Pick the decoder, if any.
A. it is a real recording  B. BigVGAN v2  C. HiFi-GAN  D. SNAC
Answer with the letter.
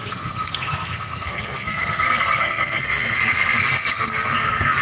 D